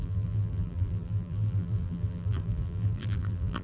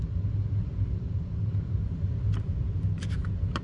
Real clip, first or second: second